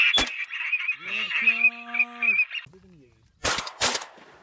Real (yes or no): yes